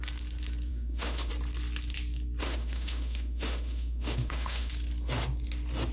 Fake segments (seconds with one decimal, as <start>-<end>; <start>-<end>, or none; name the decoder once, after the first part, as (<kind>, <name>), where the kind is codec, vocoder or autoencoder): 0.7-1.3 (autoencoder, DAC-VAE); 2.4-4.7